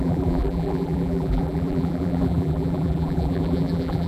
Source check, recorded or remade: remade